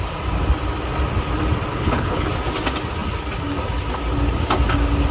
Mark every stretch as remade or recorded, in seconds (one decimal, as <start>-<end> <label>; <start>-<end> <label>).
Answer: 0.0-1.7 recorded; 1.7-2.3 remade; 2.3-5.1 recorded